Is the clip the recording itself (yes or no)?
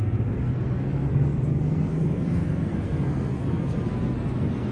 no